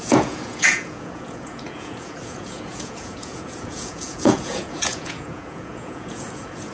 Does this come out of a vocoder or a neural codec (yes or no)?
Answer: yes